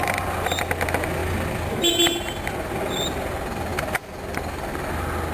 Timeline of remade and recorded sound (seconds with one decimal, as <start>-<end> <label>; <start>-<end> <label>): 0.0-5.3 recorded